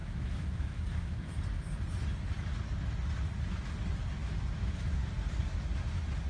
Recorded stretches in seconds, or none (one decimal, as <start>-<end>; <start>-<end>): 1.4-4.2; 5.1-6.3